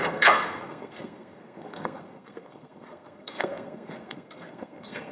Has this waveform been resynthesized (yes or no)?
yes